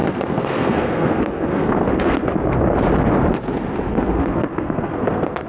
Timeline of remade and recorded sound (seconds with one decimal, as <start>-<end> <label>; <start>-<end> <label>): 0.0-2.3 remade; 2.3-3.9 recorded; 3.9-5.5 remade